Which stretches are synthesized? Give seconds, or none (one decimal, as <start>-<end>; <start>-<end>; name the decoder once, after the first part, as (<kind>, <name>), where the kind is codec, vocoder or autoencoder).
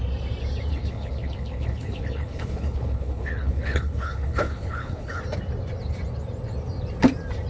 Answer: 0.7-5.2 (codec, HILCodec)